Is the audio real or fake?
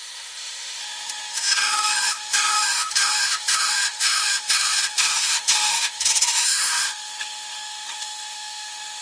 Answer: fake